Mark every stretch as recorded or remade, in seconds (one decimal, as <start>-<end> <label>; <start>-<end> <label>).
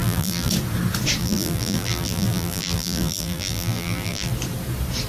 0.0-0.5 remade; 0.5-1.2 recorded; 1.2-4.3 remade; 4.3-5.1 recorded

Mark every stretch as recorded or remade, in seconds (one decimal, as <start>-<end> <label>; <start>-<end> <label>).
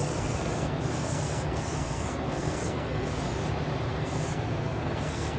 0.0-3.2 remade; 3.2-3.9 recorded; 3.9-5.4 remade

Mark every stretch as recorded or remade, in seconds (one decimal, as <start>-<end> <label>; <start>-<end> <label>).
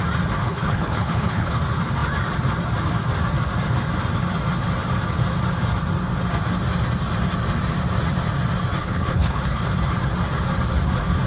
0.0-0.4 recorded; 0.4-1.6 remade; 1.6-8.8 recorded; 8.8-9.6 remade; 9.6-11.3 recorded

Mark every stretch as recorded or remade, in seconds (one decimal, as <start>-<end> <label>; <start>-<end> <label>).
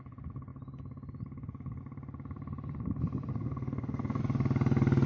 0.0-3.3 recorded; 3.3-4.2 remade; 4.2-5.1 recorded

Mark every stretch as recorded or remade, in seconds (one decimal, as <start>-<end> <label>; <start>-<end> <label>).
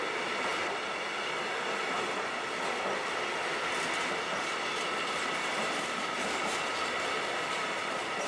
0.0-8.3 recorded